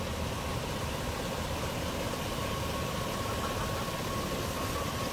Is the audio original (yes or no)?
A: yes